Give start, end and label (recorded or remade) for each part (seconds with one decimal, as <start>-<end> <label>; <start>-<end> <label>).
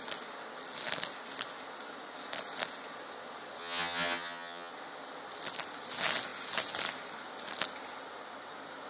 0.0-3.6 recorded; 3.6-4.7 remade; 4.7-8.9 recorded